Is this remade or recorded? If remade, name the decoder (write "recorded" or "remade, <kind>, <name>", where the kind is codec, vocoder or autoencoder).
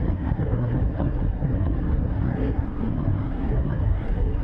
remade, codec, SNAC